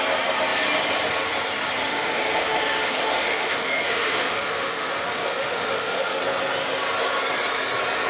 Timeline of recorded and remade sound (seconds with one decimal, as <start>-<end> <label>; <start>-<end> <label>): 0.0-1.8 recorded; 1.8-6.2 remade; 6.2-8.1 recorded